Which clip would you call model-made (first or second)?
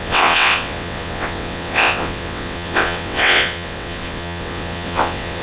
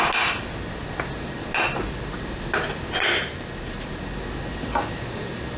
first